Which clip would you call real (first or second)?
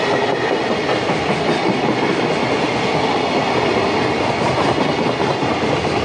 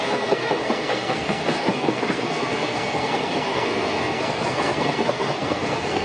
first